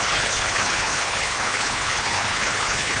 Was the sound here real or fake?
fake